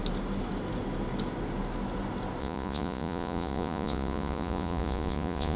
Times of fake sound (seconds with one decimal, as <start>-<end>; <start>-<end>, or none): 2.4-5.6

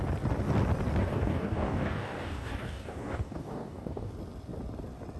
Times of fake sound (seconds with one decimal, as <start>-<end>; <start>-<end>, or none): 1.0-4.1

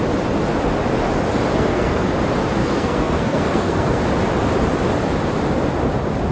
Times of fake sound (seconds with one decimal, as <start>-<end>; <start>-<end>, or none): 1.5-2.1; 2.6-4.0

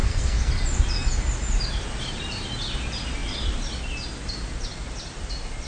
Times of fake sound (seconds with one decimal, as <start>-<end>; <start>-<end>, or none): 0.0-0.5

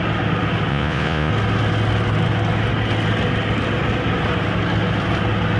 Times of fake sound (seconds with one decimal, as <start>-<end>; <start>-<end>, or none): 0.7-1.3

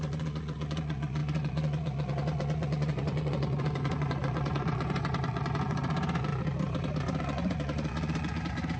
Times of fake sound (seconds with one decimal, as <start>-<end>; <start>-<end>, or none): 0.0-6.3; 7.2-8.8

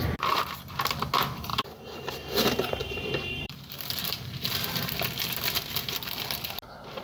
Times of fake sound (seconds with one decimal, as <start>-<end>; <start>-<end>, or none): 1.5-2.1; 2.8-4.9

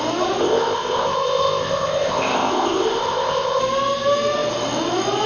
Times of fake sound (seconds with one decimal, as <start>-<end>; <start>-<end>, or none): 0.4-3.6